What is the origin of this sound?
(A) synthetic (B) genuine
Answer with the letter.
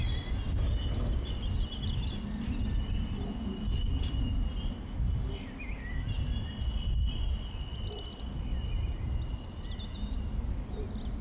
B